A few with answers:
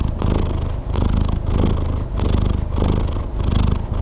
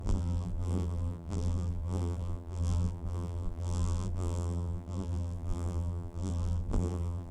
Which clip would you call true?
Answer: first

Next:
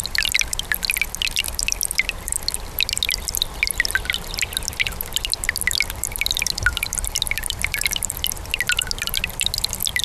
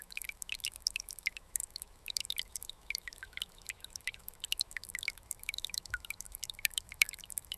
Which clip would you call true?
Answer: first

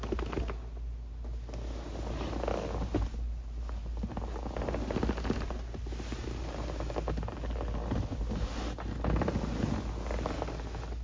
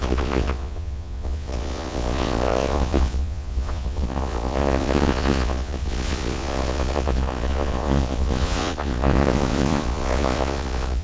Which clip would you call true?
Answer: first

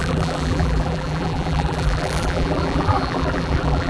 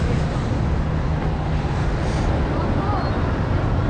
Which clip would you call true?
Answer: second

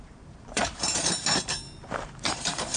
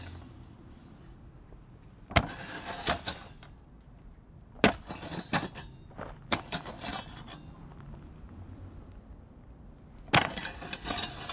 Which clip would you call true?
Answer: second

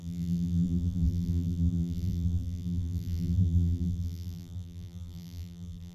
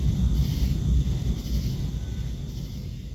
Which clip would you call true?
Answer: second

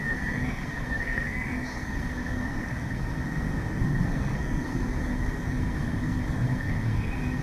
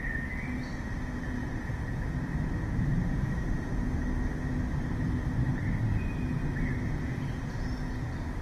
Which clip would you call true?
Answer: second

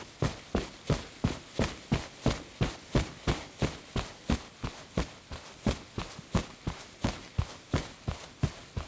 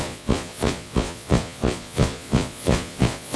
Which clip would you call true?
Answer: first